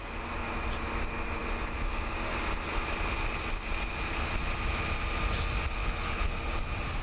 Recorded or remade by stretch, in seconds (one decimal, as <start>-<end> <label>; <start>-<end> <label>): 0.0-5.8 recorded; 5.8-6.3 remade; 6.3-7.0 recorded